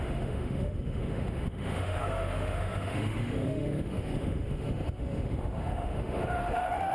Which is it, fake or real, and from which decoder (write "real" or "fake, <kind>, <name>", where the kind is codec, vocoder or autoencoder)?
fake, autoencoder, DAC-VAE